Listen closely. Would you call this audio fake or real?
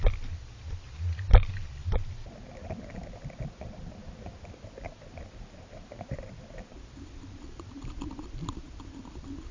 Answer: real